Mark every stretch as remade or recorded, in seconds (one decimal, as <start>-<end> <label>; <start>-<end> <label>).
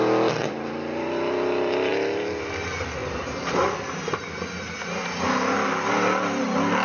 0.0-6.8 recorded